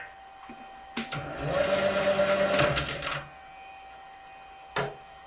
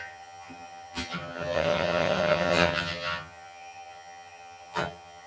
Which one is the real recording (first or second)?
first